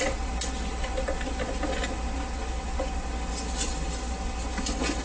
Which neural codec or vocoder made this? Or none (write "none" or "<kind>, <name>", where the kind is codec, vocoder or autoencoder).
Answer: none